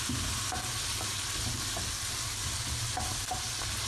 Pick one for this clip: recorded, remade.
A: recorded